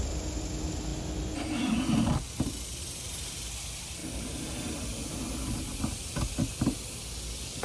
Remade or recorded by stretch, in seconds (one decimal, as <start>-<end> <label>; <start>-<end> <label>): 0.0-7.6 recorded